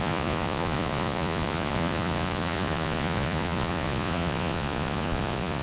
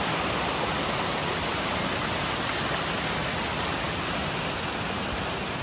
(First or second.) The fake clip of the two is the first